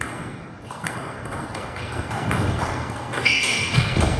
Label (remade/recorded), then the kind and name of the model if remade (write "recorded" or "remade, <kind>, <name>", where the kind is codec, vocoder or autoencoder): remade, codec, SNAC